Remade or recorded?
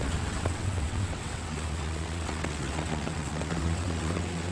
remade